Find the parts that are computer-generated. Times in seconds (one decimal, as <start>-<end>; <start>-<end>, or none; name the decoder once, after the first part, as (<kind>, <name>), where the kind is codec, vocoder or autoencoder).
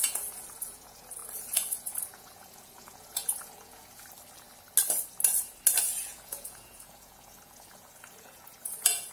0.0-4.0 (vocoder, Vocos); 6.0-9.1